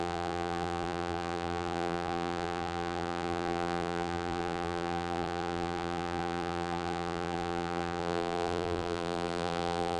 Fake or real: fake